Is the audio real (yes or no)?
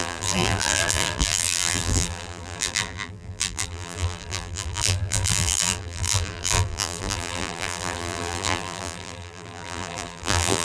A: no